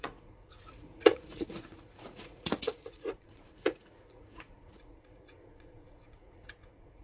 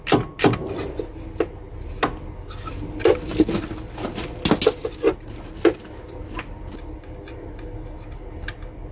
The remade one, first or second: first